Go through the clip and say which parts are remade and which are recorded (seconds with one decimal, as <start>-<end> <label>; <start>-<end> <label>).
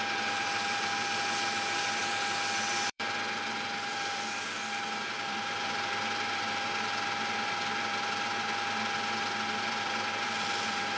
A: 0.0-11.0 remade